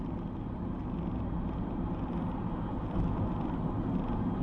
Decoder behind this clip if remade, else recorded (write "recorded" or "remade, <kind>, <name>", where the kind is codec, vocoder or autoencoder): recorded